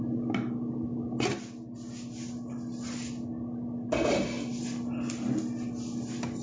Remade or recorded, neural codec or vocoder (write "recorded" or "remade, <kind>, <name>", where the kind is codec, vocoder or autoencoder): recorded